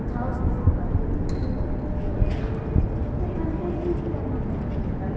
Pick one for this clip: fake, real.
real